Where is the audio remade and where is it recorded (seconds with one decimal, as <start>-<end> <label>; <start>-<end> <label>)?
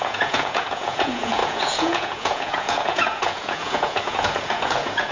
0.0-5.1 remade